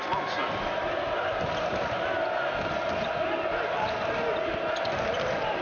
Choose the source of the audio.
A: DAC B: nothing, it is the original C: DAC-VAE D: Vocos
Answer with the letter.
B